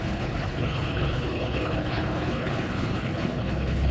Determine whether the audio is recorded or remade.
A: remade